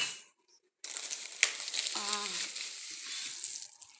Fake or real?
real